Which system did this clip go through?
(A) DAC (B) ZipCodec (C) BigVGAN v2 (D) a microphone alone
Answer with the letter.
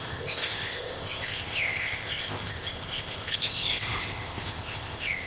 B